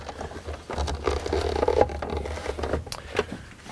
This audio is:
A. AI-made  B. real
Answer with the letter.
B